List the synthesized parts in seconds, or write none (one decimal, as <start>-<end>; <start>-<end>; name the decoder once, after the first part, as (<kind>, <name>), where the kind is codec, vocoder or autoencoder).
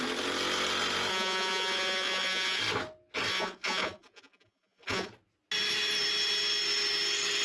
1.1-2.6 (vocoder, Vocos); 3.3-5.1